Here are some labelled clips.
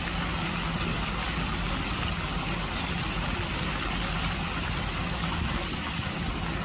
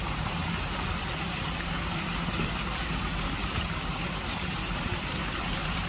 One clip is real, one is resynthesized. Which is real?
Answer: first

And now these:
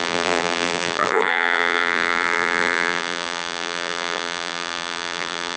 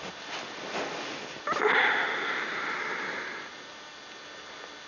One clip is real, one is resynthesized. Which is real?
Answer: second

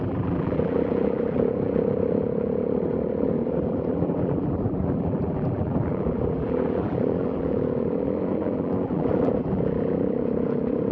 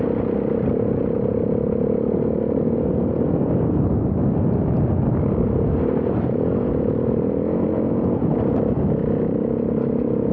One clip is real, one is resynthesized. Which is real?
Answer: second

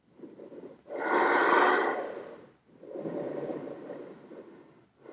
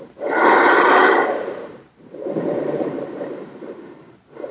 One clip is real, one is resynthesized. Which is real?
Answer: first